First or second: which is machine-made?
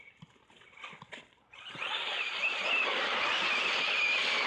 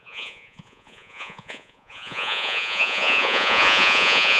second